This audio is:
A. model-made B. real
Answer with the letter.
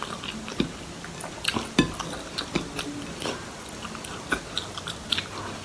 B